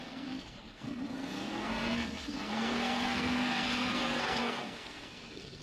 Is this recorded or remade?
remade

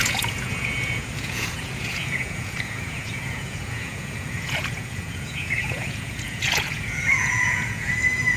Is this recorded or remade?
remade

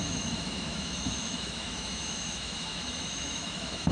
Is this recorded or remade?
remade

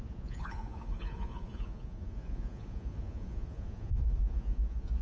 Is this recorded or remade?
remade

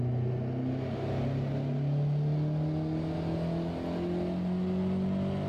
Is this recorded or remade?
recorded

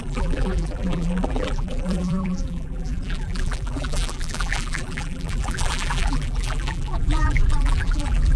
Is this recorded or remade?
remade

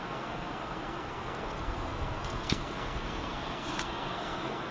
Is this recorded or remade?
remade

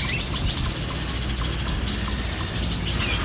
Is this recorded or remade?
recorded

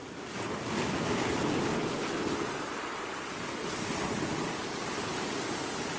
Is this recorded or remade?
recorded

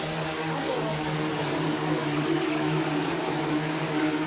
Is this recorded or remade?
remade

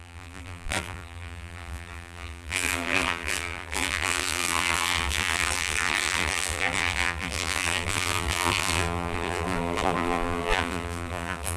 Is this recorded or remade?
remade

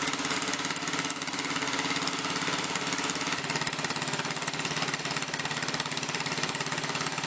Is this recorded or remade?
recorded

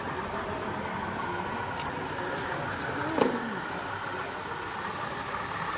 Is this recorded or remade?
recorded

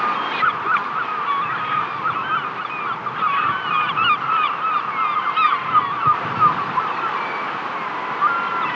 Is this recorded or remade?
recorded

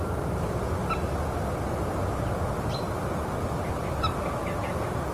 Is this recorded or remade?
recorded